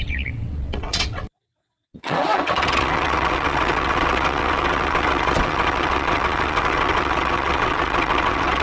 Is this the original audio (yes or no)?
no